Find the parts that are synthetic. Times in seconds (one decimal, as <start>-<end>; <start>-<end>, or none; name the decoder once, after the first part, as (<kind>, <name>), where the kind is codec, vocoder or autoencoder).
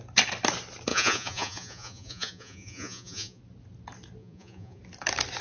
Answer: 0.9-3.4 (vocoder, Vocos); 4.2-4.8